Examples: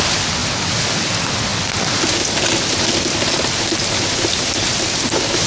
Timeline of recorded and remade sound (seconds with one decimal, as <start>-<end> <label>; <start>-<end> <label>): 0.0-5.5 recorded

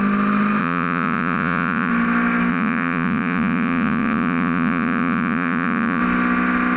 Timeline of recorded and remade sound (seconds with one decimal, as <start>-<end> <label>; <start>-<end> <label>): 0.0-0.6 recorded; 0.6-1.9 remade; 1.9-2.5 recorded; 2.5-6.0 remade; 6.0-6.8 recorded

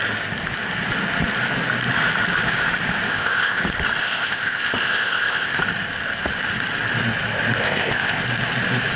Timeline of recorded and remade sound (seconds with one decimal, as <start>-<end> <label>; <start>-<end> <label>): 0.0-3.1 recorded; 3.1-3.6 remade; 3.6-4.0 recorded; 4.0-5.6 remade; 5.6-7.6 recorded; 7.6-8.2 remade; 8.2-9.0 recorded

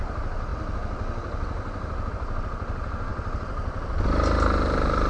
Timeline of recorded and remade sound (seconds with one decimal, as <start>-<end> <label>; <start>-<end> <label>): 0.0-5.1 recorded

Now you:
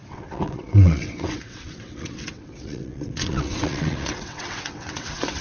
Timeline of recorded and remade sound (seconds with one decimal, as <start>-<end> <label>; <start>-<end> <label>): 0.0-5.4 remade